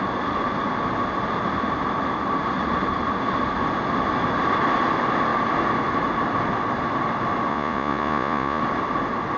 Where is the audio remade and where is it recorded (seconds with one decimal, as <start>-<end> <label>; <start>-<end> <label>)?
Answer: 0.0-7.5 recorded; 7.5-8.6 remade; 8.6-9.4 recorded